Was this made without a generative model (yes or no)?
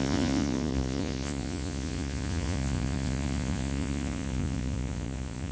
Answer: no